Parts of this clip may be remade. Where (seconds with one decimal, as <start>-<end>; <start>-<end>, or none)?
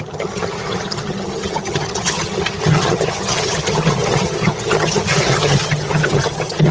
0.0-6.7